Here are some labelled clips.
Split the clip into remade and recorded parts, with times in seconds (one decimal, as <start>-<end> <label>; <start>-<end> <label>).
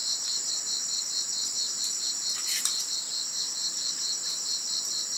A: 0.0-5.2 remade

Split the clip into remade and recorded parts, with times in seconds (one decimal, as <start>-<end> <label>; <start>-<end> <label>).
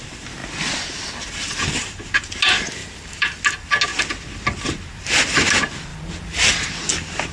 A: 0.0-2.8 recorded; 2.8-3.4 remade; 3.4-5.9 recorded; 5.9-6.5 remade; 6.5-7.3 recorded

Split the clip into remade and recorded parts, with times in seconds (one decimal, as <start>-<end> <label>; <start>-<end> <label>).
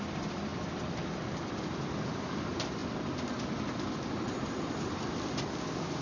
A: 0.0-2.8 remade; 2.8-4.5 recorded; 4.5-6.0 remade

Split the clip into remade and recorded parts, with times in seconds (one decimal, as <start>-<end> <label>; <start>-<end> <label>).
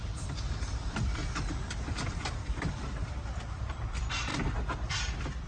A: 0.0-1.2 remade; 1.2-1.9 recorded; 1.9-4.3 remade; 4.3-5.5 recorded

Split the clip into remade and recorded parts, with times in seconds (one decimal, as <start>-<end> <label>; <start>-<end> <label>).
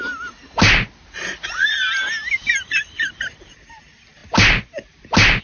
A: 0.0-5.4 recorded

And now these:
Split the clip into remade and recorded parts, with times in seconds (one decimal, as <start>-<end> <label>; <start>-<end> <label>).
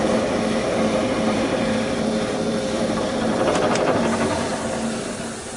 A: 0.0-4.5 remade; 4.5-5.0 recorded; 5.0-5.6 remade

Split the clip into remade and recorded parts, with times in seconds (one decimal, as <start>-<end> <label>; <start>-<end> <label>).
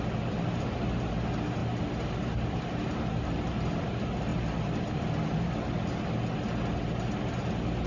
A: 0.0-1.6 recorded; 1.6-3.6 remade; 3.6-4.3 recorded; 4.3-5.0 remade; 5.0-7.9 recorded